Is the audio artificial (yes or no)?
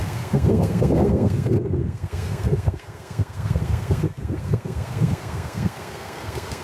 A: yes